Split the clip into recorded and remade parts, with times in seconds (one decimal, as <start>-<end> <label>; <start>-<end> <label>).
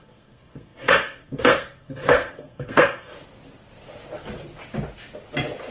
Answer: 0.0-3.1 remade; 3.1-5.7 recorded